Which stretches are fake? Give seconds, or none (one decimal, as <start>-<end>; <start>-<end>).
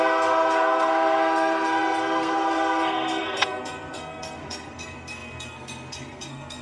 0.0-6.6